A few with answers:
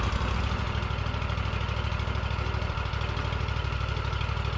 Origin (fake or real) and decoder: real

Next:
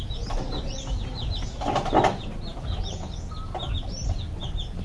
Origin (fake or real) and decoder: real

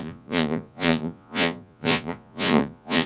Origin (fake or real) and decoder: fake, vocoder, Vocos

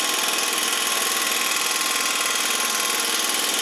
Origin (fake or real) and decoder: real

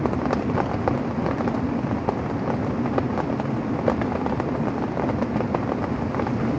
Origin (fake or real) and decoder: real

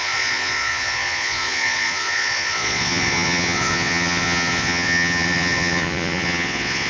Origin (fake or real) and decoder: fake, vocoder, Vocos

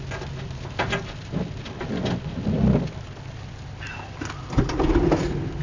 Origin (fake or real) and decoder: real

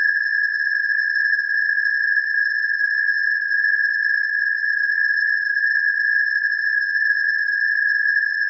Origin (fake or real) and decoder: fake, vocoder, Vocos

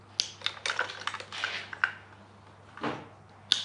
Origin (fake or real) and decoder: real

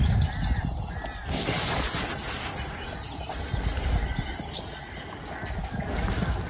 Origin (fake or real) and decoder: real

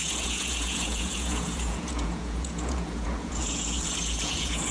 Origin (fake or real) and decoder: fake, vocoder, Vocos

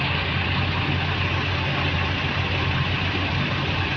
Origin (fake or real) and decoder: real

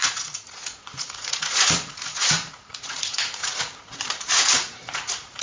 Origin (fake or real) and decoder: fake, vocoder, Vocos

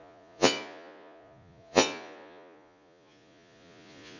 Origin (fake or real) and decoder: fake, vocoder, Vocos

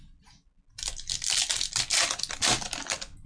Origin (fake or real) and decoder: real